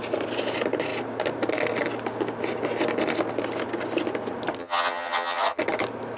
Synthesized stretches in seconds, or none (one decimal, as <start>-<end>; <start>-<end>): 4.6-5.6